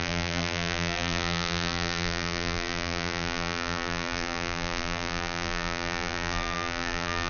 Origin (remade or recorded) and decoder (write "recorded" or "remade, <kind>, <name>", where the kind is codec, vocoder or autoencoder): remade, vocoder, BigVGAN v2